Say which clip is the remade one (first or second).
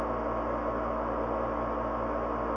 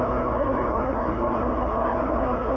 second